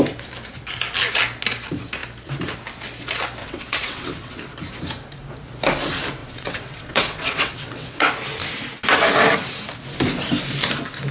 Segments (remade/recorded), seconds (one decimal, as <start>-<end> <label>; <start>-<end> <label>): 0.0-3.4 recorded; 3.4-4.3 remade; 4.3-6.2 recorded; 6.2-8.1 remade; 8.1-11.1 recorded